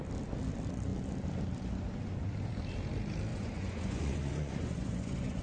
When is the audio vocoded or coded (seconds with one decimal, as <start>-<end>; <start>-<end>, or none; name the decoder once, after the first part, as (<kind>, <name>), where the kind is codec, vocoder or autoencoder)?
3.3-5.4 (vocoder, Vocos)